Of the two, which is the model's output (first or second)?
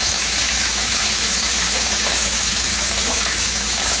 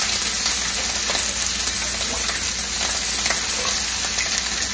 first